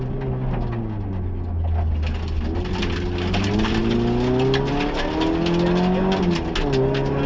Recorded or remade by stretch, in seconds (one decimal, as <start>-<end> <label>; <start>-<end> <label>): 0.0-7.3 recorded